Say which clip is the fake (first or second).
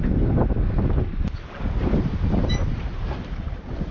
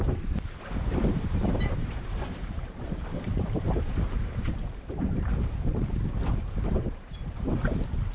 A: second